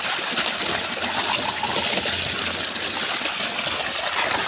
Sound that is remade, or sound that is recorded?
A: recorded